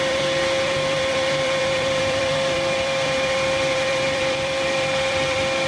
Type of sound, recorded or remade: remade